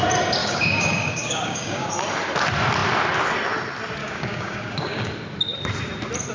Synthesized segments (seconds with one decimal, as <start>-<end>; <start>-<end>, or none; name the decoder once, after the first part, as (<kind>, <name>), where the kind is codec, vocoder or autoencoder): 0.4-1.9 (codec, DAC); 4.0-5.1